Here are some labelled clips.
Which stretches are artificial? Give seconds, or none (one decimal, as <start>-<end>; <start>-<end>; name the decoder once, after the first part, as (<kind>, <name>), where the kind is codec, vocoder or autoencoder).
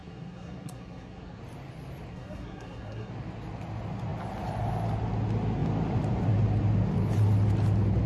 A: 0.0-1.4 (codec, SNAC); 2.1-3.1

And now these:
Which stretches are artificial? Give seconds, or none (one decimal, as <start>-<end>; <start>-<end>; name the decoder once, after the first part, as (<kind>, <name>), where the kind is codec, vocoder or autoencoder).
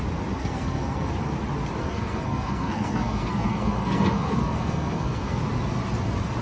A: 0.4-1.1 (codec, SNAC); 1.8-5.4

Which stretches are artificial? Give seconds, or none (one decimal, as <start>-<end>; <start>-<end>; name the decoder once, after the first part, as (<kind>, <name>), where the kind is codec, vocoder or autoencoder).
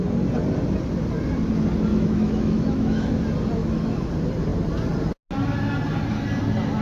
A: 1.9-3.1 (autoencoder, DAC-VAE); 3.6-4.1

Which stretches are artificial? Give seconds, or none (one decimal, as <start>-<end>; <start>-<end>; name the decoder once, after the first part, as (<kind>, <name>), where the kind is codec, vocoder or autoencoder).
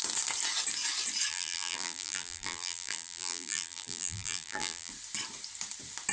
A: 1.3-4.9 (vocoder, BigVGAN v2)